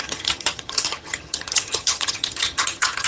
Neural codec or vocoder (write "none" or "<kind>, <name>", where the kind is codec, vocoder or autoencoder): vocoder, HiFi-GAN